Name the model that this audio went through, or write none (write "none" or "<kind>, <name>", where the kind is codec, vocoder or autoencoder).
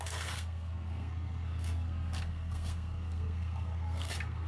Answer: codec, SNAC